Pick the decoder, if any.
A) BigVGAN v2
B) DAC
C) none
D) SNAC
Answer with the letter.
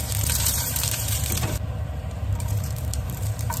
A